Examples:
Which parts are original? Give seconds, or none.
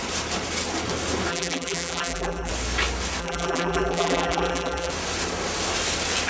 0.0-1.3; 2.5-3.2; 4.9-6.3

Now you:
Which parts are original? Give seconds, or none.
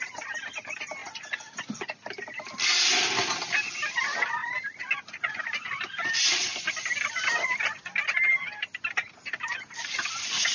0.0-10.5